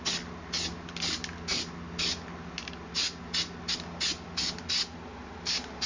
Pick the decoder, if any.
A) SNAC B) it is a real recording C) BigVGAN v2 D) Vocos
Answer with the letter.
B